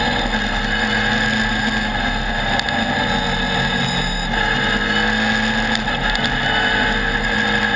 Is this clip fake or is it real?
real